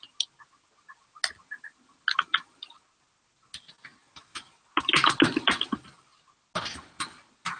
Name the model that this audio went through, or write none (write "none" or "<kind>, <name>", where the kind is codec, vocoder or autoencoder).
none